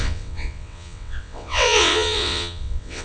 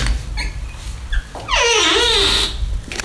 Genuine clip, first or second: second